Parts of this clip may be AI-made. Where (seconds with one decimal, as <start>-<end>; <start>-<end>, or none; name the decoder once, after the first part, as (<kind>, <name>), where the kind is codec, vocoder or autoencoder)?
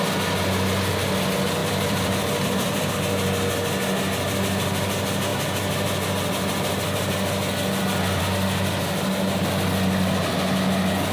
1.6-2.9 (vocoder, BigVGAN v2)